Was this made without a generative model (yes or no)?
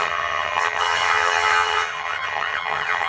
no